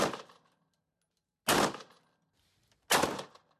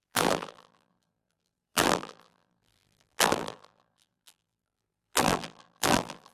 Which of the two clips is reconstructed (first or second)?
second